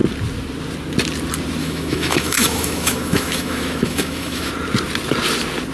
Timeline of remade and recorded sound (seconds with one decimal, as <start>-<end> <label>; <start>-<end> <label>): 0.0-1.6 recorded; 1.6-4.5 remade; 4.5-5.7 recorded